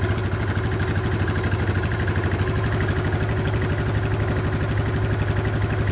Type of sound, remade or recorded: recorded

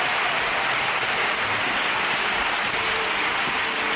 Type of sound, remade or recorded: recorded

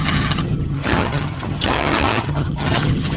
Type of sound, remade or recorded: remade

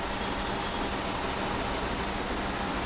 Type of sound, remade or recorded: recorded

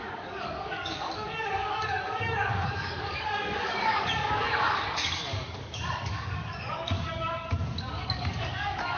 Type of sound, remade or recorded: remade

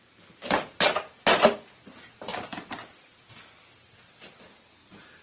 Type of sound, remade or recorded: recorded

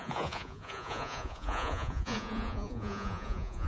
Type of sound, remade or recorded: remade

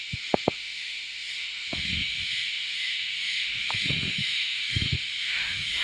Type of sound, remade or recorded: remade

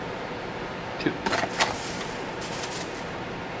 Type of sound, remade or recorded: recorded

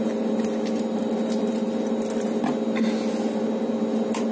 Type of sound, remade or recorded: recorded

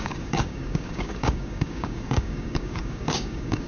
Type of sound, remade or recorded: remade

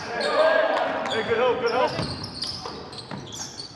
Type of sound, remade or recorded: recorded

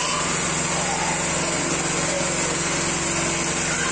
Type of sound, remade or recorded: recorded